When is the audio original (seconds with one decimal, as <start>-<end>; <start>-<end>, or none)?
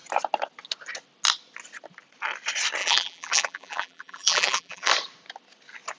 0.0-2.8; 4.9-6.0